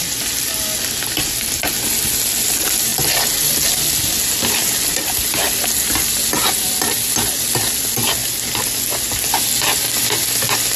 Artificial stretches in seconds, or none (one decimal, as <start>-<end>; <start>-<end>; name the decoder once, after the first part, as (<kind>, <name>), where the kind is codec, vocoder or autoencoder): none